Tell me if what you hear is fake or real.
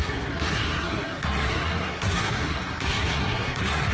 fake